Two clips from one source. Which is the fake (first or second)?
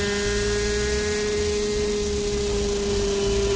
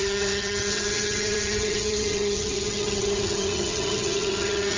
second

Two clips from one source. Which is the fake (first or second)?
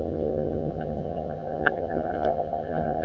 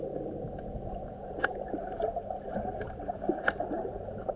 first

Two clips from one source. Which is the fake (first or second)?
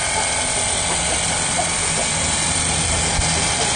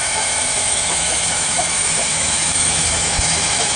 second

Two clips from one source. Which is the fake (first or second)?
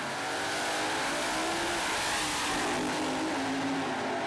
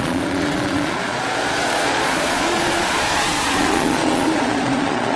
second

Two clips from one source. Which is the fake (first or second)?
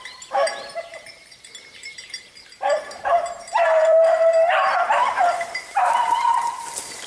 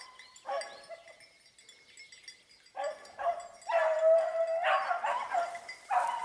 first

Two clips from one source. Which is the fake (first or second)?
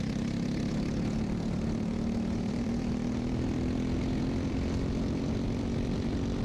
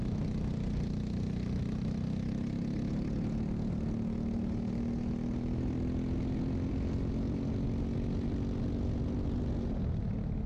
first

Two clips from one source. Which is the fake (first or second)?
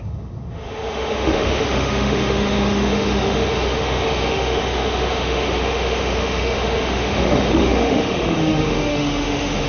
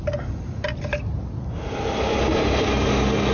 first